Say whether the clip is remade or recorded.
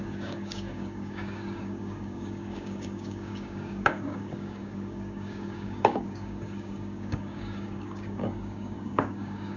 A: remade